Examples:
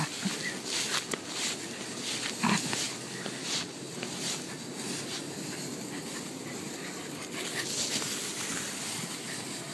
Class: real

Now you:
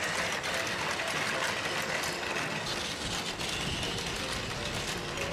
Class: real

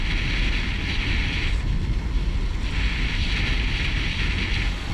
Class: real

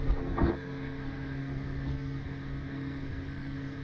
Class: fake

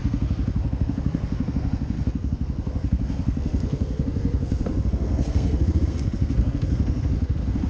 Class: fake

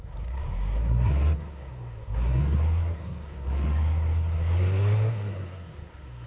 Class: fake